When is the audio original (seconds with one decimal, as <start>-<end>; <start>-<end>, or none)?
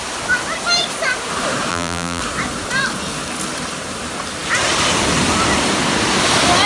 0.0-1.7; 2.2-6.7